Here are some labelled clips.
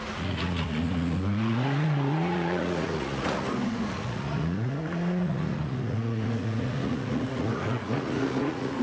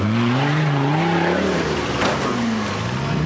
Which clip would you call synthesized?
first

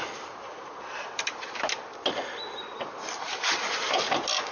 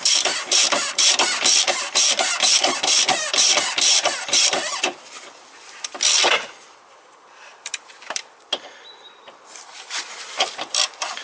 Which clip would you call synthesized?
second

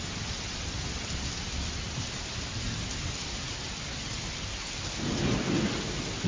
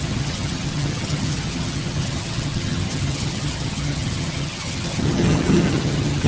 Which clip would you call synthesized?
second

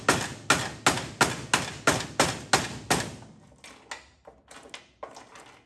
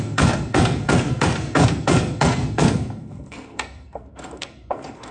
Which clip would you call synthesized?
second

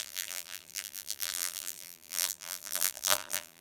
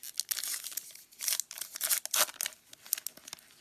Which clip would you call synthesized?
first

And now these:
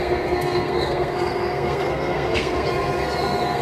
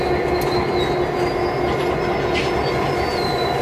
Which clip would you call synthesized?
first